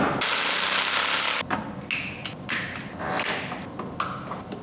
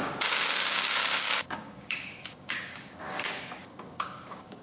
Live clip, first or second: first